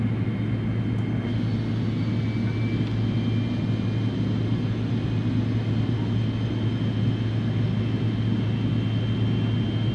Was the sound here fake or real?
real